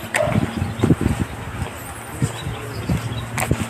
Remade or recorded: recorded